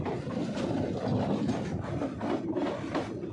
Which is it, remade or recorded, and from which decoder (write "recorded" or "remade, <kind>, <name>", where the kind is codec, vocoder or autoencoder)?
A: recorded